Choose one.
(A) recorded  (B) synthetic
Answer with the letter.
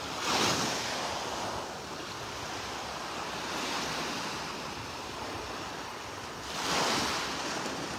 A